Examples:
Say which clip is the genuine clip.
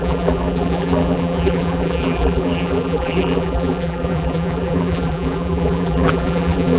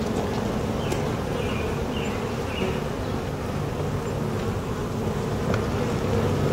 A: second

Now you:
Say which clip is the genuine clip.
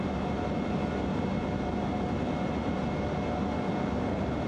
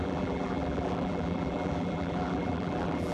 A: first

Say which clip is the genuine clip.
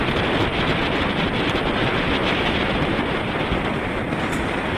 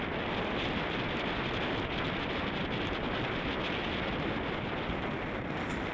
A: second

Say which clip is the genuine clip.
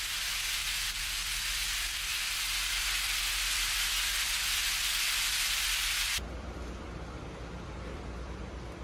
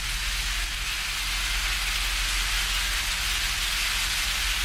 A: second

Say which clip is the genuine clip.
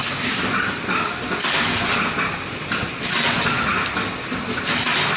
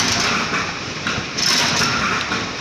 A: first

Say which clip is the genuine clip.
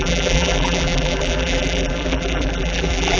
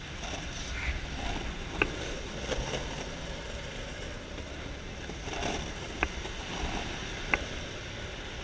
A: second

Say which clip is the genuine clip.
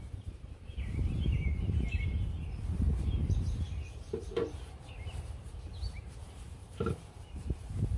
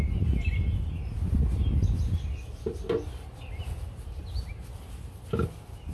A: second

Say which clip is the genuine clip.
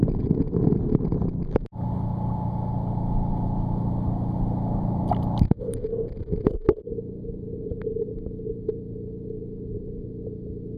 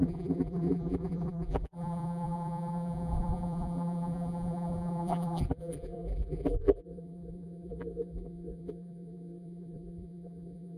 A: first